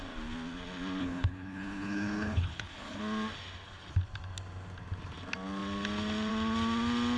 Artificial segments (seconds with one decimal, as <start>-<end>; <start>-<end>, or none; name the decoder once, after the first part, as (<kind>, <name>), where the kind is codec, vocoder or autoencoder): 1.0-3.0 (codec, HILCodec)